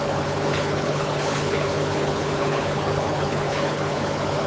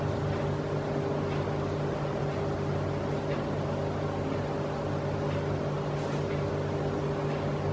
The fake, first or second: first